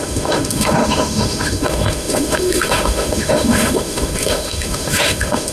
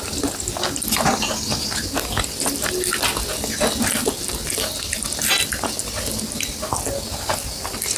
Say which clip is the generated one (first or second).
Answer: first